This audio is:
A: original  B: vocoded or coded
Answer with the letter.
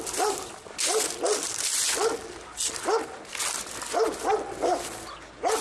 A